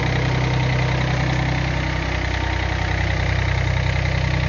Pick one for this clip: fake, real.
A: real